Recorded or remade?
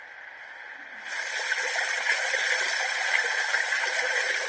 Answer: recorded